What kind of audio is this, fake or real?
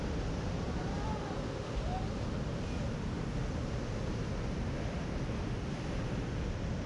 real